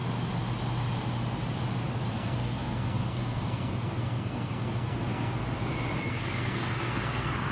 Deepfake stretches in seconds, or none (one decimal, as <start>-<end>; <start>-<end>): 2.1-5.4; 6.0-7.5